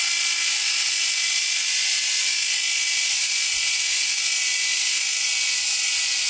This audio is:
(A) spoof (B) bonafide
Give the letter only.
B